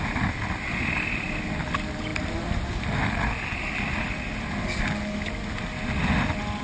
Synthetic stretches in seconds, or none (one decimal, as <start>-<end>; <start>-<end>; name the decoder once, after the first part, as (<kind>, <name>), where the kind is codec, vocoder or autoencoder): none